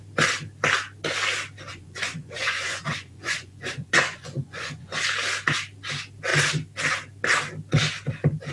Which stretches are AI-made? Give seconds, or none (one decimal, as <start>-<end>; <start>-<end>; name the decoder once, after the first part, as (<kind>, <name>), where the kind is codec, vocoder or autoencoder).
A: 1.7-5.0 (vocoder, Vocos)